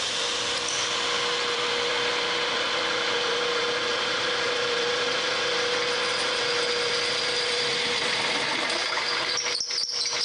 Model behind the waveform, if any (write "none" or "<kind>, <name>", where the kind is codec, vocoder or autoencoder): vocoder, BigVGAN v2